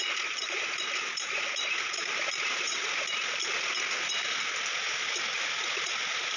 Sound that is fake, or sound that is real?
real